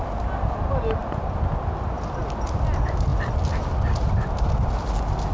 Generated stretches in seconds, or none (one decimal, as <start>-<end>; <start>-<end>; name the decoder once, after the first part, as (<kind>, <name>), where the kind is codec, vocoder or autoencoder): none